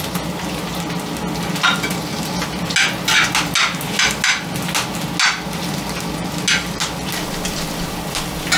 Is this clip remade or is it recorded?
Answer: recorded